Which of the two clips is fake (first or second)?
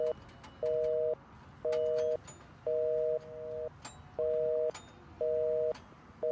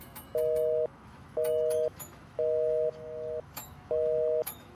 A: second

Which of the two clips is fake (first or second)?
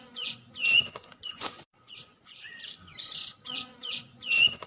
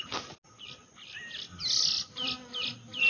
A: first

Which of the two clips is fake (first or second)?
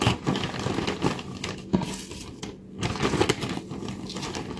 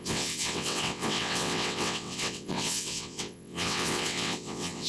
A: second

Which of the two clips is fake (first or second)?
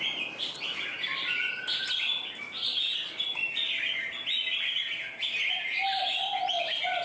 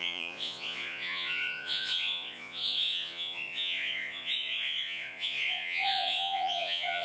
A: second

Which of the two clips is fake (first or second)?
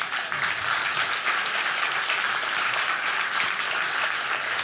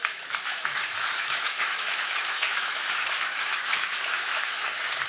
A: second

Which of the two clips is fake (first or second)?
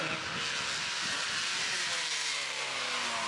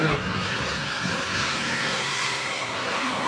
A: second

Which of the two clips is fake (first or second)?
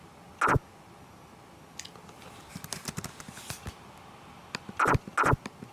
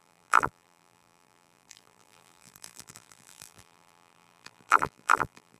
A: second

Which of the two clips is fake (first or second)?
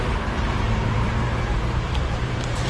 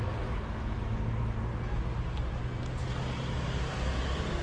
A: first